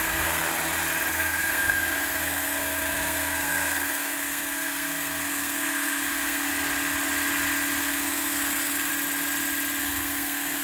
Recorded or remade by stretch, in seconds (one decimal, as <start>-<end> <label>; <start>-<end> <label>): 0.0-0.4 remade; 0.4-1.1 recorded; 1.1-6.5 remade; 6.5-7.8 recorded; 7.8-8.9 remade; 8.9-9.8 recorded; 9.8-10.6 remade